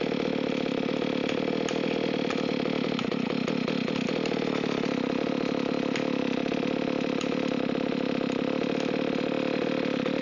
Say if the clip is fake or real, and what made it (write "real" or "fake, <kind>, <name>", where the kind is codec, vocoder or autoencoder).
real